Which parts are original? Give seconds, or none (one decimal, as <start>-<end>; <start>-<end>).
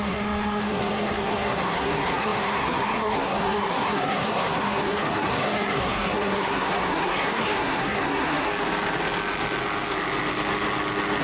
8.5-11.2